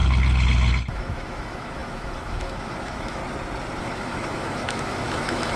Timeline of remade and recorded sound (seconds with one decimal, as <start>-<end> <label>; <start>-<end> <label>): 0.0-0.9 recorded; 0.9-3.2 remade; 3.2-3.8 recorded; 3.8-5.6 remade